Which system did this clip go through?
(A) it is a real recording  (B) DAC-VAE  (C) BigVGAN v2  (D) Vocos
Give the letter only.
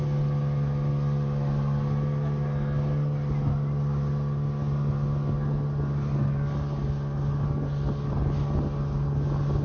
A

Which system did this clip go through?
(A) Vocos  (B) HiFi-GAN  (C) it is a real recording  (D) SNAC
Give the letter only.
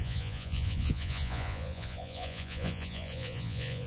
A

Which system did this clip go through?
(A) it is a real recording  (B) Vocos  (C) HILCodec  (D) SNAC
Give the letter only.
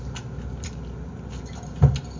A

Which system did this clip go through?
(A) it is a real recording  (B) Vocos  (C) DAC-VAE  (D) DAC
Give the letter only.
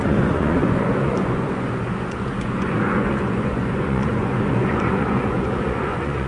B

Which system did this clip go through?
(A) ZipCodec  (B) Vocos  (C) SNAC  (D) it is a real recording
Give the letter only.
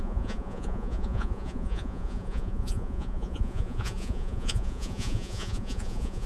B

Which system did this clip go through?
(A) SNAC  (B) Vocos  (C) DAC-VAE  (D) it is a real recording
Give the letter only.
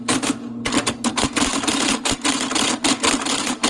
D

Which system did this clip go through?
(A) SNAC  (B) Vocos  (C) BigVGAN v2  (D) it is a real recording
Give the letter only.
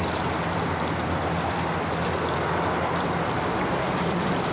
D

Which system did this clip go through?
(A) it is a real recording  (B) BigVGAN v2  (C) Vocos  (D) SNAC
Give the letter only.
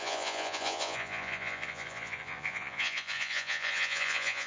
C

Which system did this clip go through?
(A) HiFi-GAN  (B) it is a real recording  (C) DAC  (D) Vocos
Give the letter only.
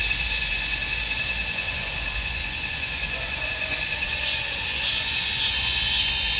D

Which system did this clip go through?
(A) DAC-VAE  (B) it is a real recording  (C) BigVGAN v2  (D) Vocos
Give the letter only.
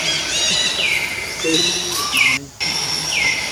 B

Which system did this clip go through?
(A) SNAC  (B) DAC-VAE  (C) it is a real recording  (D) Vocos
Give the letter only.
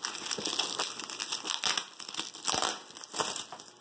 C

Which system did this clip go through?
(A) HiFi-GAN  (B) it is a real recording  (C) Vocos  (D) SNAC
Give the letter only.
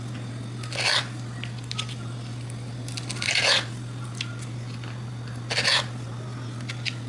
B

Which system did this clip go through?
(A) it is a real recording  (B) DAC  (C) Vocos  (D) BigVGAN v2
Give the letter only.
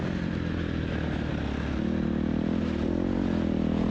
A